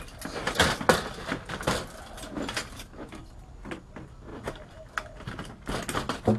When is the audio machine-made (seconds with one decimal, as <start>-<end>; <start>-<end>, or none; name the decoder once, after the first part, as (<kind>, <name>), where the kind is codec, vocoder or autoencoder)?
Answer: none